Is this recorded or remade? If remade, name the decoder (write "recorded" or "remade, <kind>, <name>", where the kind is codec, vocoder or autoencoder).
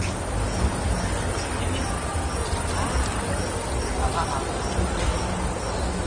recorded